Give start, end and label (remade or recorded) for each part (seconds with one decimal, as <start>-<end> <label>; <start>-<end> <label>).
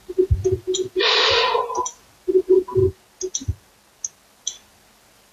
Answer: 0.0-5.3 recorded